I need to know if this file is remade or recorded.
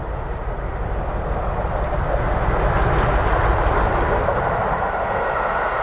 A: recorded